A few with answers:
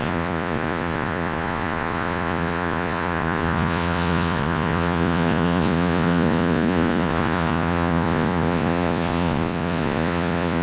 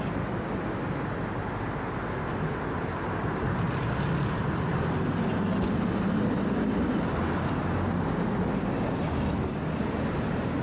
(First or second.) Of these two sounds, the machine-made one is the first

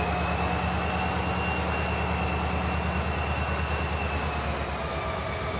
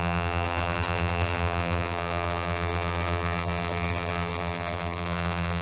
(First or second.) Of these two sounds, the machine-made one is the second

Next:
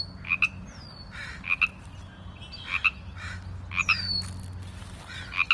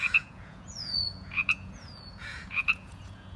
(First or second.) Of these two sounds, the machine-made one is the second